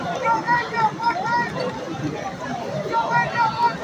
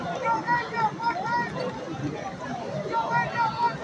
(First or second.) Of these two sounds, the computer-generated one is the first